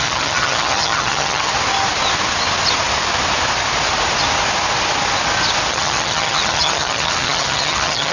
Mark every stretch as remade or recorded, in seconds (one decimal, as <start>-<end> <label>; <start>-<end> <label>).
0.0-1.5 remade; 1.5-5.7 recorded; 5.7-8.1 remade